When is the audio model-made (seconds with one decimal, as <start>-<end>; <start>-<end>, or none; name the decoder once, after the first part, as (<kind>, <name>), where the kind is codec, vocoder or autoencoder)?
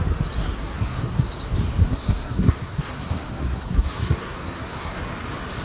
0.4-1.3 (codec, SNAC); 1.8-5.0